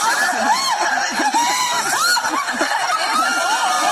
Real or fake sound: real